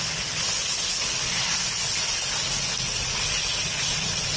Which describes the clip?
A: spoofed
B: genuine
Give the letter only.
B